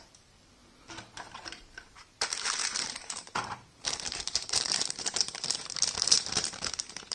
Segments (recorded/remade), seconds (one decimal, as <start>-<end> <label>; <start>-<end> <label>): 0.0-7.1 remade